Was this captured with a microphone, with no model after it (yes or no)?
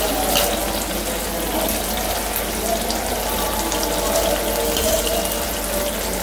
yes